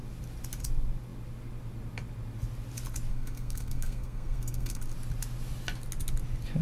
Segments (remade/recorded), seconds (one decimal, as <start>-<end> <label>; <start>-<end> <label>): 0.0-3.1 recorded; 3.1-4.8 remade; 4.8-6.6 recorded